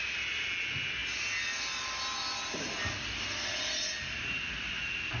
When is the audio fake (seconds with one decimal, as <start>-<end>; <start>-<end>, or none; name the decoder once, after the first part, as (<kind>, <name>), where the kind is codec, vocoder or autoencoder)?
none